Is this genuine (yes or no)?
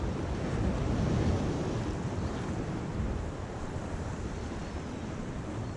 yes